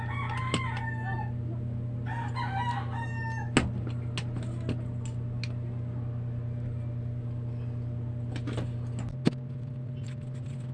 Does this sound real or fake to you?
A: real